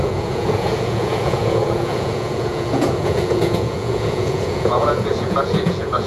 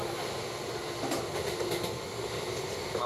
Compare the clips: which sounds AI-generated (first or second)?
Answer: first